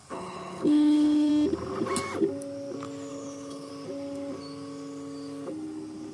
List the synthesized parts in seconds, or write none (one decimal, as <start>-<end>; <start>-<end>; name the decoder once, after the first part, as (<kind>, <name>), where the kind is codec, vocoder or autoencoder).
0.0-1.3 (codec, HILCodec); 3.1-3.7